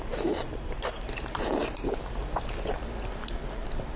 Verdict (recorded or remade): remade